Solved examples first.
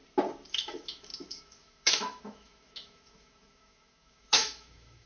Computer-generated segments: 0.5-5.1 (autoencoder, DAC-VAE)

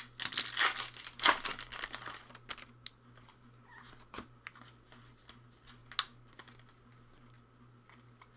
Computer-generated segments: none

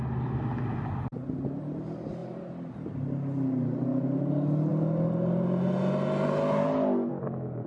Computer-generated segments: none

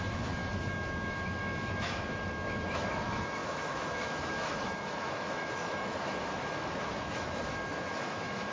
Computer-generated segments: 0.0-8.5 (autoencoder, DAC-VAE)

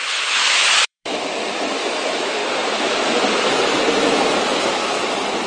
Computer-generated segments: 0.0-2.4 (autoencoder, DAC-VAE); 4.7-5.5

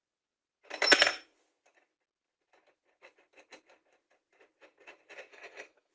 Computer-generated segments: 5.3-5.9 (autoencoder, DAC-VAE)

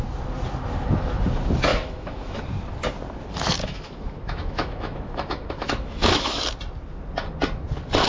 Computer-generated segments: 1.7-2.4 (autoencoder, DAC-VAE); 3.6-6.4

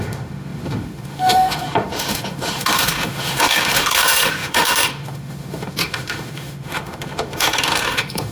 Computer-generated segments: 0.0-8.3 (autoencoder, DAC-VAE)